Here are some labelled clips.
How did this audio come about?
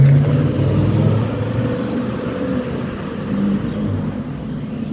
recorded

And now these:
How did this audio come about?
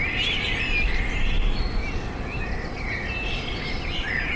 recorded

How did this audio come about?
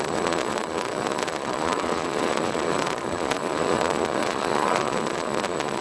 remade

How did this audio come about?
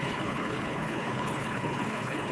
remade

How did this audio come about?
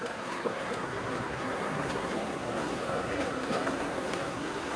remade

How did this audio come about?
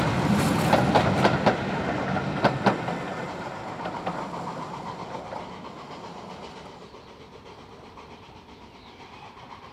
recorded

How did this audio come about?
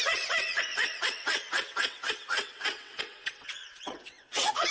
remade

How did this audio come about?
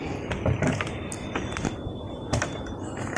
recorded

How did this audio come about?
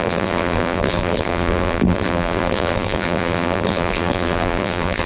remade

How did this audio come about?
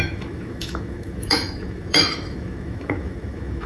remade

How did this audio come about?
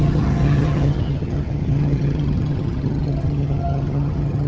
remade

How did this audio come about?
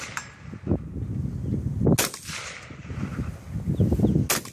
recorded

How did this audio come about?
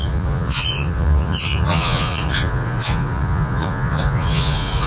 remade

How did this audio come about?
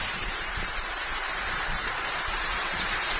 remade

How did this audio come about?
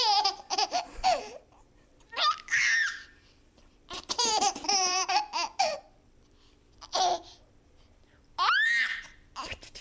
remade